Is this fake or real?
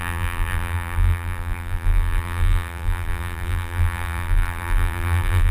fake